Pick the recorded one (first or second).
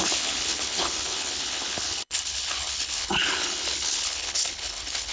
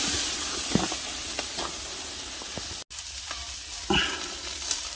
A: second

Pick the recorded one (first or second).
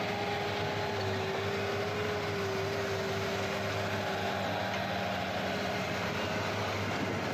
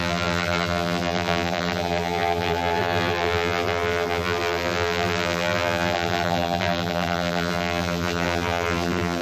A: first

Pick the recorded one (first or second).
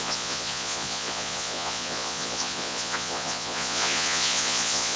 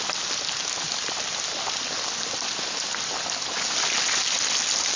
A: second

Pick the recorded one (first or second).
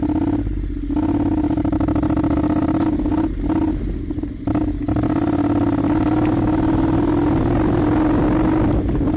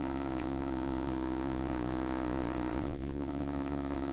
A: first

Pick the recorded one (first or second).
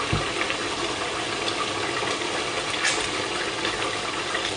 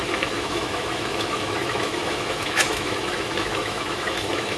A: first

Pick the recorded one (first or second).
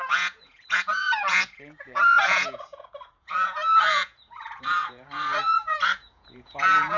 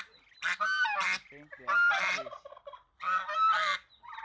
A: second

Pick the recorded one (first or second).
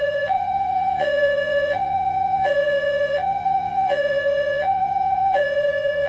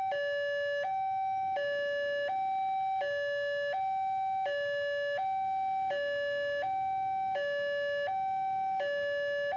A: second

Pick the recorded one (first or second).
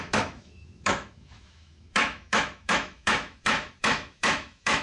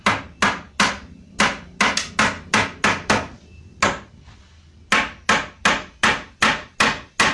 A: second